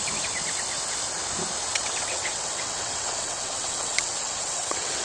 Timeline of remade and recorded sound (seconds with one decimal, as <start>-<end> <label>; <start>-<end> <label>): 0.0-1.7 recorded; 1.7-5.0 remade